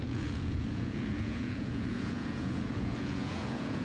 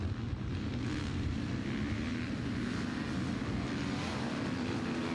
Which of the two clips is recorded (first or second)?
second